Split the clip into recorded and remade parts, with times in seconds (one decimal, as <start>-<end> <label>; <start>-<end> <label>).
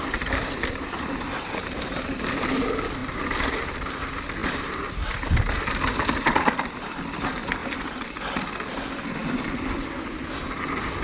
0.0-7.6 remade; 7.6-8.7 recorded; 8.7-9.2 remade; 9.2-10.2 recorded; 10.2-11.0 remade